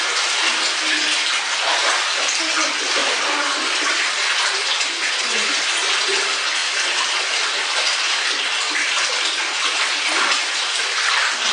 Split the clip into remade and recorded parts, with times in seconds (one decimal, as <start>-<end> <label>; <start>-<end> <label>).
0.0-3.0 recorded; 3.0-5.1 remade; 5.1-6.6 recorded; 6.6-11.1 remade; 11.1-11.5 recorded